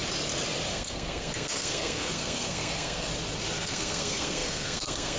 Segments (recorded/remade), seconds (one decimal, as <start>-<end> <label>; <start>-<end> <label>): 0.0-0.7 recorded; 0.7-3.1 remade; 3.1-3.6 recorded; 3.6-5.2 remade

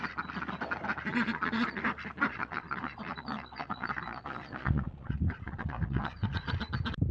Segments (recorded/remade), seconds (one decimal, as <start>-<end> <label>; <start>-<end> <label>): 0.0-1.1 recorded; 1.1-1.8 remade; 1.8-2.3 recorded; 2.3-6.6 remade; 6.6-7.1 recorded

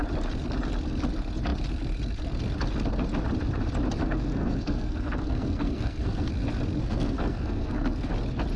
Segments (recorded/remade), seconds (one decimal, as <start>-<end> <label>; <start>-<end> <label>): 0.0-4.0 recorded; 4.0-6.3 remade; 6.3-6.8 recorded; 6.8-8.1 remade; 8.1-8.6 recorded

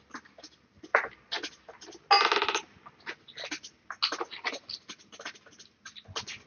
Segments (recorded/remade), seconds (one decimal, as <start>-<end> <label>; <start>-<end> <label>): 0.0-6.5 recorded

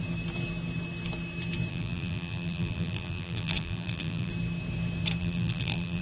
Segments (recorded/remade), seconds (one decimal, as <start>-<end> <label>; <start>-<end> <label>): 0.0-1.7 recorded; 1.7-4.3 remade; 4.3-5.2 recorded; 5.2-6.0 remade

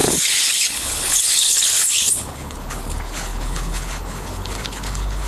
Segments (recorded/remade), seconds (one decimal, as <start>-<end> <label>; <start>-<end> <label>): 0.0-5.3 remade